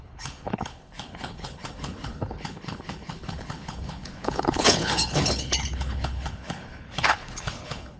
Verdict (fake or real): fake